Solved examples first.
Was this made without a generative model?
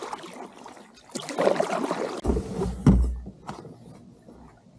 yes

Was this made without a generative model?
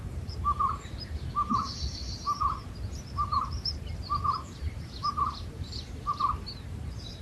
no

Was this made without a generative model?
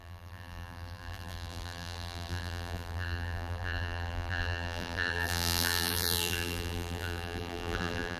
no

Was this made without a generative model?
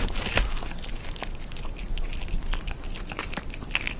yes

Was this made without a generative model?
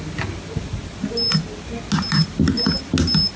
yes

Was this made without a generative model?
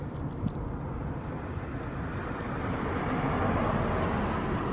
yes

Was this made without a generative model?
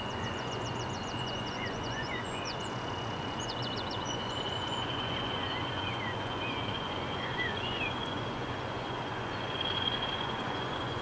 no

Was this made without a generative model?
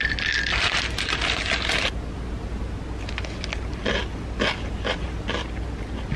yes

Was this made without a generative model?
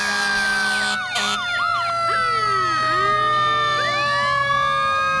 yes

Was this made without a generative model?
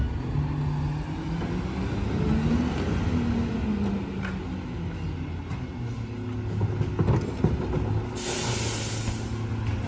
yes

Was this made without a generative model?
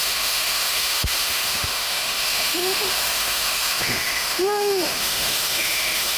no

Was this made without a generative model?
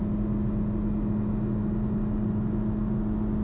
yes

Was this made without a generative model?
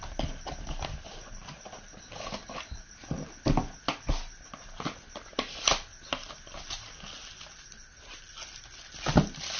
yes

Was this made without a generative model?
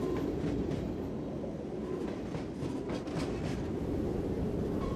yes